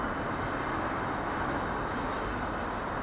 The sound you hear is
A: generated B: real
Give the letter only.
B